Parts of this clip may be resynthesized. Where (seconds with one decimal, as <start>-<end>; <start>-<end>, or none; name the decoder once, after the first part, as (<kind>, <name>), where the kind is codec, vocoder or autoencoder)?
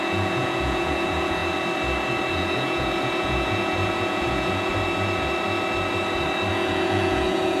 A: 0.0-1.4 (vocoder, Vocos); 2.3-4.7; 6.5-7.6